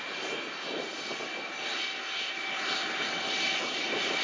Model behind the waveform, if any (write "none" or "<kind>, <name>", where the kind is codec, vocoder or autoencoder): none